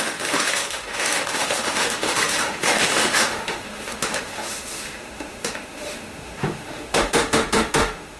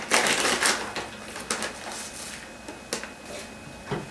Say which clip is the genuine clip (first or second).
second